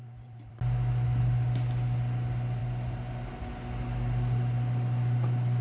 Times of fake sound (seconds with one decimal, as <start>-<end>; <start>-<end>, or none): none